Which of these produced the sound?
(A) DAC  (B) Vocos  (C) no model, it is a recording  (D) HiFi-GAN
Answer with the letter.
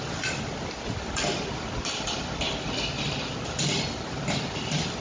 C